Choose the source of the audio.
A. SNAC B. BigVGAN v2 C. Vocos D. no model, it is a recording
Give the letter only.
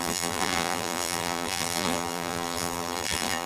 B